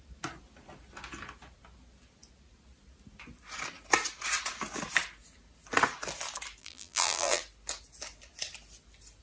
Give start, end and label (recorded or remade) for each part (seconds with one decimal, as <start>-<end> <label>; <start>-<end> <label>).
0.0-6.6 recorded; 6.6-7.4 remade; 7.4-9.2 recorded